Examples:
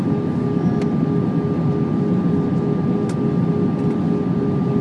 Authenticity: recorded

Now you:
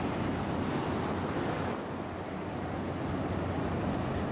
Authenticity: recorded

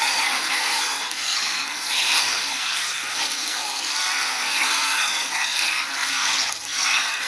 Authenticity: remade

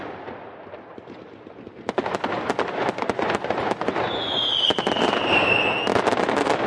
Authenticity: recorded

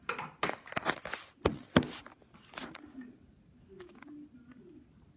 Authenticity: recorded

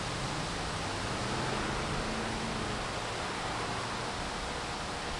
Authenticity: recorded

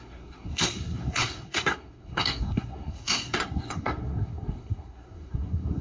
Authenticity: remade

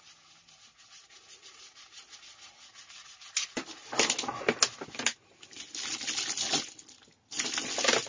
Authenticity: recorded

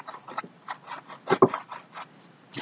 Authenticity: recorded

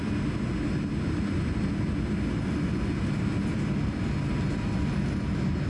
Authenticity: recorded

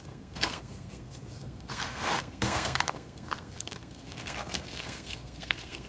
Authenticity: remade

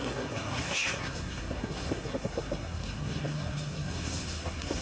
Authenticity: remade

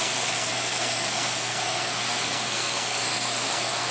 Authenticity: remade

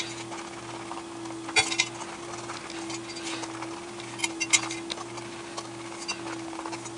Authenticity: recorded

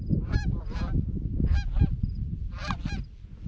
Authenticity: recorded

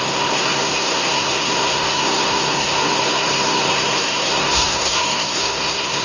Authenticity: remade